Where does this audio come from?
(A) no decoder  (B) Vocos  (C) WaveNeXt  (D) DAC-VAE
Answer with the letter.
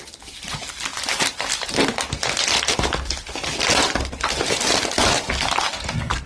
A